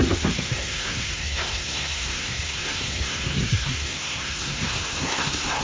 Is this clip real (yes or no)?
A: no